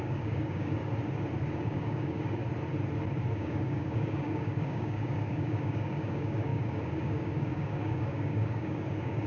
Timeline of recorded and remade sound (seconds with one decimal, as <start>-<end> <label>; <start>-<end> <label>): 0.0-0.8 remade; 0.8-1.5 recorded; 1.5-2.4 remade; 2.4-3.3 recorded; 3.3-9.3 remade